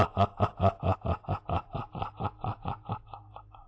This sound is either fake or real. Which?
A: real